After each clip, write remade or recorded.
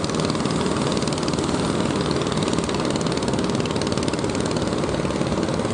recorded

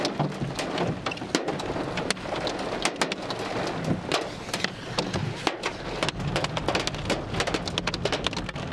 recorded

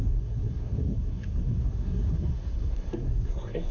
remade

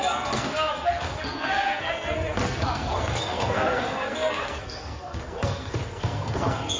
remade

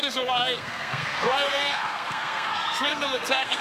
remade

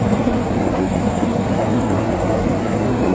remade